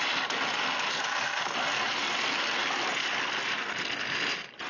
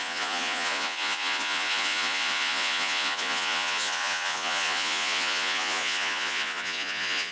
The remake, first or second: second